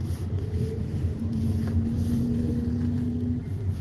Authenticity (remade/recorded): recorded